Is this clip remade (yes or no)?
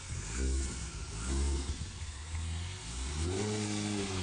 yes